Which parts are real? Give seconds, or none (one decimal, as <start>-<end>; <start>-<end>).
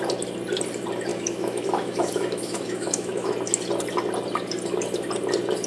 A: 0.0-1.1; 3.3-5.7